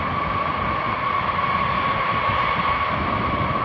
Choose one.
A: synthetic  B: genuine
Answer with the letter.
B